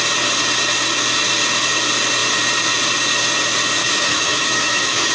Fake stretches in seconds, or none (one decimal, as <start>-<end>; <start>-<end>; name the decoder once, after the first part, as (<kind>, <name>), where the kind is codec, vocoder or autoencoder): 3.8-5.1 (autoencoder, DAC-VAE)